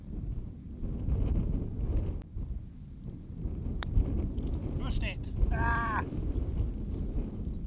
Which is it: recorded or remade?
remade